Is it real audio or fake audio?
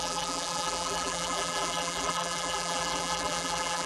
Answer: fake